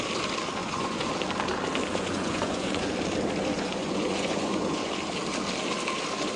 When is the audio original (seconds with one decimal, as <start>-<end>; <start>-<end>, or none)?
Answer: 0.0-0.6; 1.1-1.9; 2.9-3.5; 4.9-6.4